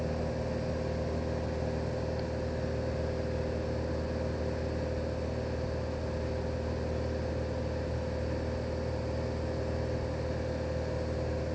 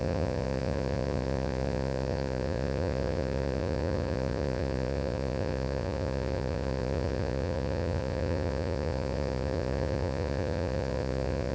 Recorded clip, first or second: first